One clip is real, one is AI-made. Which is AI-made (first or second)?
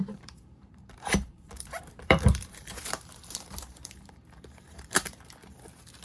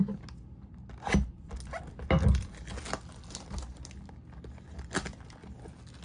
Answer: first